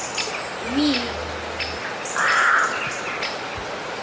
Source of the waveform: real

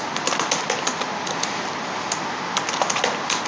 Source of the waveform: real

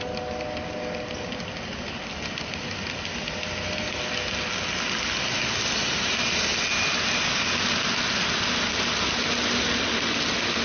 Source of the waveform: real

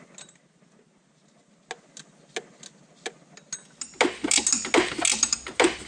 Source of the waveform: real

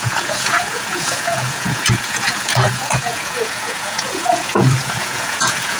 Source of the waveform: fake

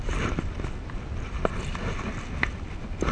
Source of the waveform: real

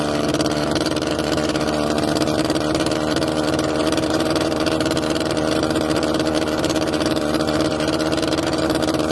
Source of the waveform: fake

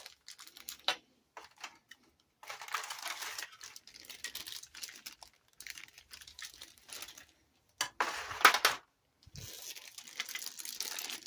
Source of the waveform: real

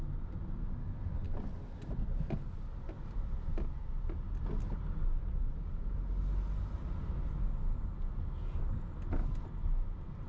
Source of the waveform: real